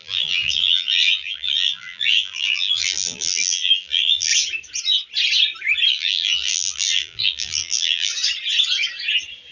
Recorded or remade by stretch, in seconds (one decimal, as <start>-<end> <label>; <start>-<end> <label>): 0.0-4.3 remade; 4.3-5.9 recorded; 5.9-8.1 remade; 8.1-9.5 recorded